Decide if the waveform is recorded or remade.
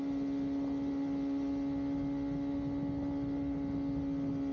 recorded